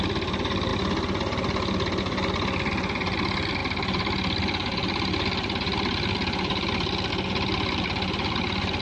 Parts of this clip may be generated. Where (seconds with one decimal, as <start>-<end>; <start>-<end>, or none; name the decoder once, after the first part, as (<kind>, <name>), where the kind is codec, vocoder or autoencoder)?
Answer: none